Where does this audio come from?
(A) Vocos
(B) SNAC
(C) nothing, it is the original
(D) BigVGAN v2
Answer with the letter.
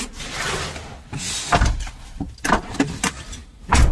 C